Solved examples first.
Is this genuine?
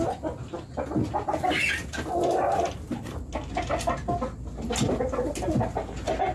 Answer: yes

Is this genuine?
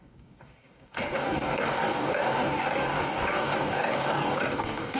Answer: no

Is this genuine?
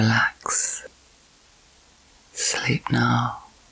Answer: yes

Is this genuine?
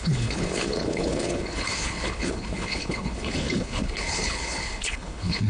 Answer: no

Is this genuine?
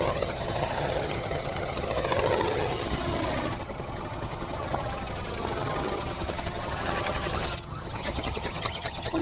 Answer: no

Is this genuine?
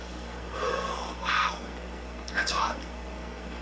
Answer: no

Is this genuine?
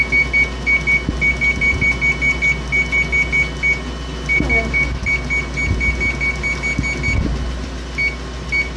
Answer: yes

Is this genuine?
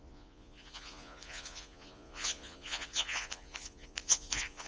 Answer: no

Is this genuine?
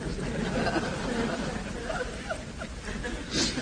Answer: yes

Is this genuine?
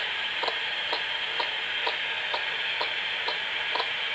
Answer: no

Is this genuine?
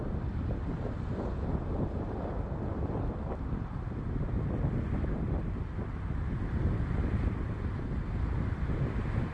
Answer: yes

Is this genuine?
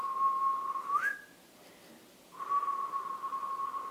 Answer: yes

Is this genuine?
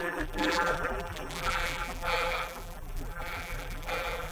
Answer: no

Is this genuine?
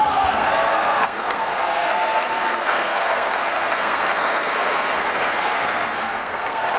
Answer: no